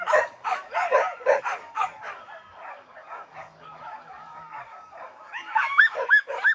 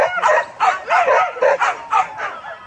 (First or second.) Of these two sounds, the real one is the second